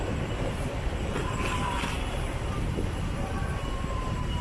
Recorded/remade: remade